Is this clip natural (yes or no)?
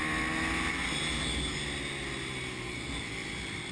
yes